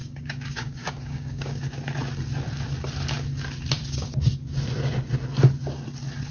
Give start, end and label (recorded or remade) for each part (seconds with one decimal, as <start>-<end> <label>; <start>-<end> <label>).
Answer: 0.0-1.6 remade; 1.6-6.3 recorded